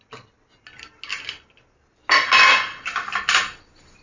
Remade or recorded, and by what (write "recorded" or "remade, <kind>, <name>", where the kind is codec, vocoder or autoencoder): recorded